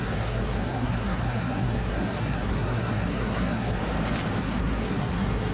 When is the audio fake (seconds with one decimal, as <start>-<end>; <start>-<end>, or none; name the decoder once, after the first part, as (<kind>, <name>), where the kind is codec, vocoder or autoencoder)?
0.0-3.8 (codec, SNAC); 4.4-5.5